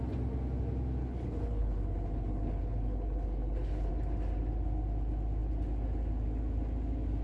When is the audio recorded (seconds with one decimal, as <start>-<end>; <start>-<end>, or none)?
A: 0.0-1.0; 3.9-7.2